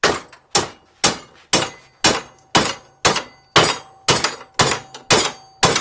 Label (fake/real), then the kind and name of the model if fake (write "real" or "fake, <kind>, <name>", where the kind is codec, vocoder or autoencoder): real